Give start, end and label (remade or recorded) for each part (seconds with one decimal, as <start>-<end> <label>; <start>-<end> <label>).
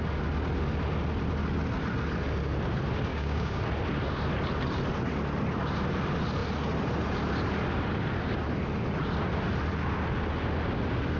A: 0.0-3.1 recorded; 3.1-3.6 remade; 3.6-11.2 recorded